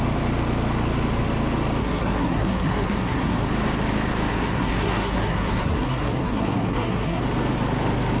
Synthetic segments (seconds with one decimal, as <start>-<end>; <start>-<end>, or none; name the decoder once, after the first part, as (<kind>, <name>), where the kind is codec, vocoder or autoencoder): 1.8-3.5 (codec, SNAC); 4.3-7.2